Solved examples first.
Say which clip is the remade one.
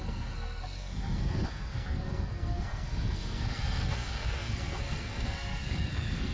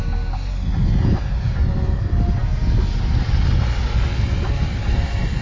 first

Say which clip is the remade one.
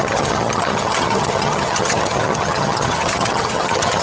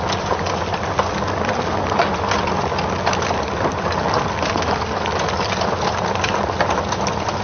first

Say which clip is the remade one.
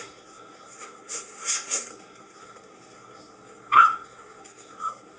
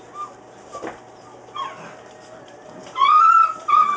first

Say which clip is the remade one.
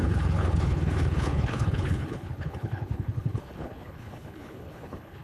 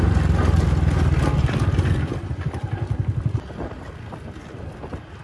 first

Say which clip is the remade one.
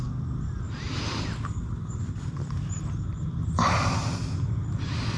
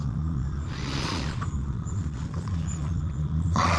second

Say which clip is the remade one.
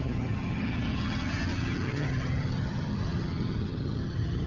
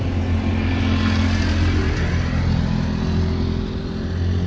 first